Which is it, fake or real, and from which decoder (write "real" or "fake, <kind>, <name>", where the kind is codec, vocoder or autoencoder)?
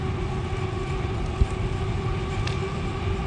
real